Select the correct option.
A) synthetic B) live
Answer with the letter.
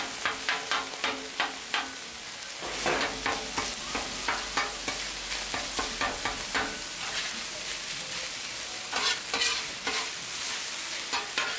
B